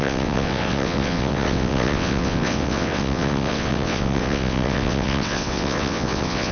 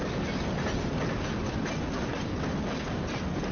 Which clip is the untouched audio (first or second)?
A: second